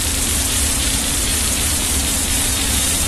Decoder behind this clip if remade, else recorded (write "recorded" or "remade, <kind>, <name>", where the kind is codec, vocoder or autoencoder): remade, vocoder, BigVGAN v2